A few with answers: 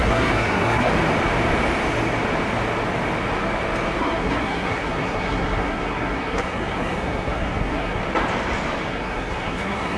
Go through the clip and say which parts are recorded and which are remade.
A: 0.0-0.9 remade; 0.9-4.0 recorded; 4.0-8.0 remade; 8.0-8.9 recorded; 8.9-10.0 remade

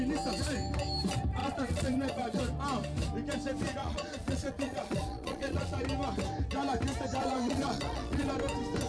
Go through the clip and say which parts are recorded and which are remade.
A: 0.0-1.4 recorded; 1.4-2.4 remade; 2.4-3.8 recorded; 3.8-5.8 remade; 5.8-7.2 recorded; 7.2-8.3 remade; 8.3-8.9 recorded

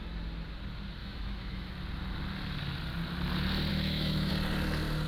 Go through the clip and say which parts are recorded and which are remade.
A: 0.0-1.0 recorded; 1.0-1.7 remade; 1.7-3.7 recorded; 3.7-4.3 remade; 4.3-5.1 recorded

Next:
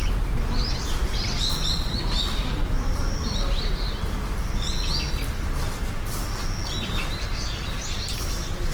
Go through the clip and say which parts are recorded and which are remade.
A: 0.0-1.0 recorded; 1.0-3.4 remade; 3.4-8.7 recorded

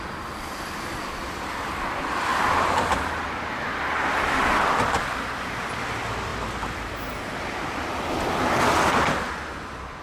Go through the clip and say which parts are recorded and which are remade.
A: 0.0-10.0 recorded

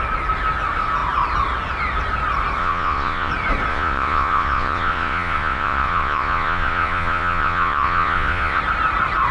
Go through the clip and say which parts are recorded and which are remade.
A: 0.0-2.6 recorded; 2.6-3.3 remade; 3.3-3.7 recorded; 3.7-8.6 remade; 8.6-9.3 recorded